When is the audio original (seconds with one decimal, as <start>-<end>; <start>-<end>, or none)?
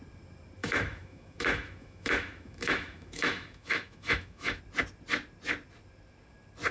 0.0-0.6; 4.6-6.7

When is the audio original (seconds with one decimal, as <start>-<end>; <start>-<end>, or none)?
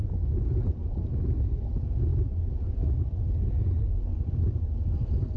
0.0-5.4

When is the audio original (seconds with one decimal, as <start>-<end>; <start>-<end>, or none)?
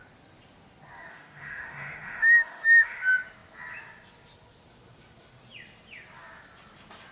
0.0-1.1; 3.0-7.1